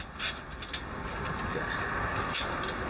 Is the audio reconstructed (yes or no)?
no